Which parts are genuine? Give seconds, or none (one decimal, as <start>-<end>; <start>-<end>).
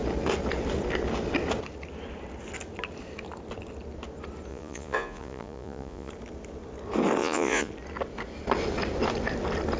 0.0-4.5; 6.1-7.2; 7.7-9.8